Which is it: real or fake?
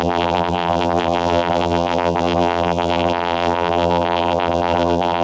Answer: fake